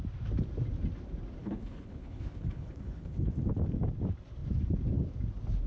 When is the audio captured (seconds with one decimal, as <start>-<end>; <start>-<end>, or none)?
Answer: 0.0-1.4; 3.3-5.7